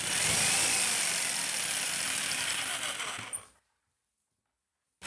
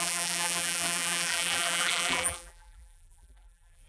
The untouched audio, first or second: first